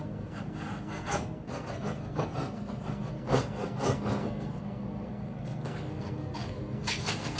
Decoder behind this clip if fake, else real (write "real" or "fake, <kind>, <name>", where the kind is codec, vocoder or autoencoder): fake, codec, SNAC